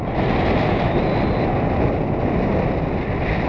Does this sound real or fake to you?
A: real